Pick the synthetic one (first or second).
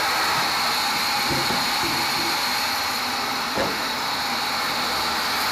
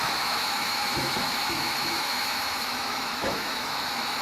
second